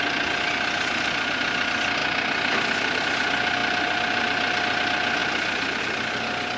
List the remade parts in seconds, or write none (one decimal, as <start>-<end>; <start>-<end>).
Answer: none